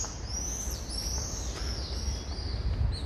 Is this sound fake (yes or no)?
no